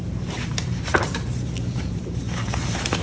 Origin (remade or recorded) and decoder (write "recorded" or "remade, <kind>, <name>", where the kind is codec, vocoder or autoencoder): remade, vocoder, BigVGAN v2